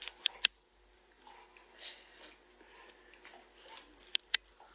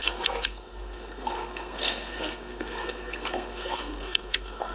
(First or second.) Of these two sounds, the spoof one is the second